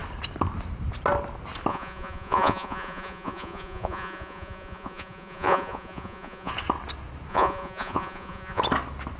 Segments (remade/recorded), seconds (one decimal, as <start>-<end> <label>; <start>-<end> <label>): 0.0-1.7 recorded; 1.7-6.5 remade; 6.5-7.3 recorded; 7.3-8.6 remade; 8.6-9.2 recorded